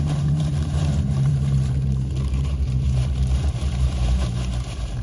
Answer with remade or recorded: remade